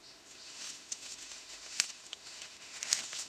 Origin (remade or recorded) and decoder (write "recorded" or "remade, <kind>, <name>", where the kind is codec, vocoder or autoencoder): remade, autoencoder, DAC-VAE